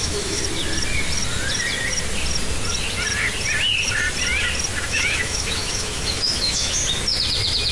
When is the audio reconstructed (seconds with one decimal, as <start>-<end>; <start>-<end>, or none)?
0.0-0.4; 4.9-6.8